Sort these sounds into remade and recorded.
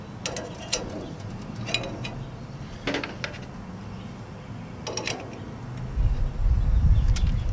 recorded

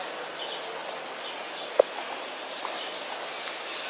recorded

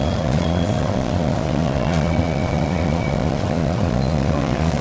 remade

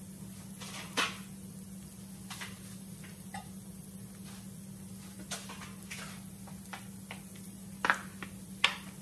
recorded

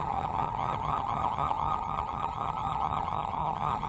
remade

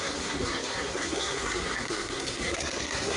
remade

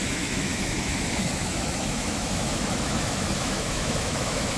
remade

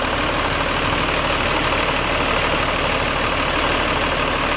recorded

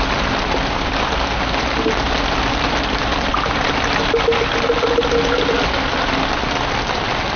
recorded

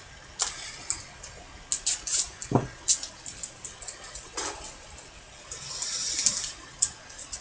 recorded